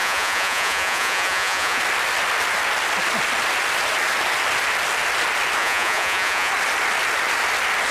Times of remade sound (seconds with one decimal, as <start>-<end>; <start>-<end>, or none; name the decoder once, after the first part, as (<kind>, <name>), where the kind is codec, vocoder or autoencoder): 0.0-1.8 (vocoder, Vocos); 5.6-6.5